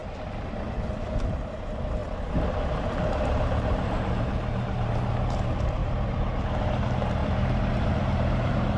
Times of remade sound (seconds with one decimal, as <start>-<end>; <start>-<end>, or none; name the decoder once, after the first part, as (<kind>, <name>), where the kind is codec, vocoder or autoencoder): 1.4-8.8 (vocoder, BigVGAN v2)